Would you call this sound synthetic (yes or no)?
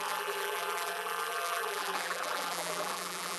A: yes